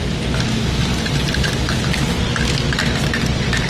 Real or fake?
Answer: real